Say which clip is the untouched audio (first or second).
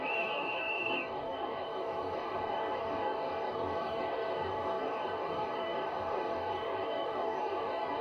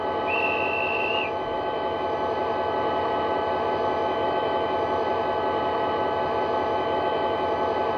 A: second